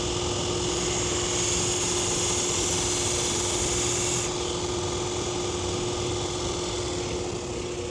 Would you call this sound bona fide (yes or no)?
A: yes